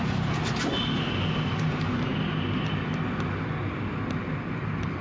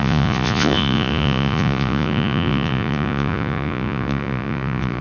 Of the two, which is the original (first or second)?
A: first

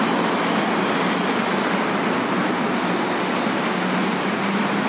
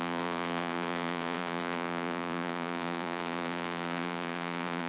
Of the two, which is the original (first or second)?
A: first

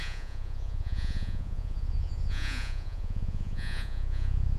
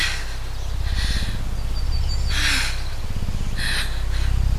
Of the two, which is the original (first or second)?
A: second